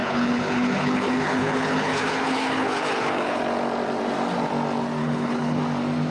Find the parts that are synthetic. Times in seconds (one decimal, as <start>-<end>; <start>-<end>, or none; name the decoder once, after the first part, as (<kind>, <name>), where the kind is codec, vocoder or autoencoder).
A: 0.0-3.4 (codec, HILCodec); 5.0-5.6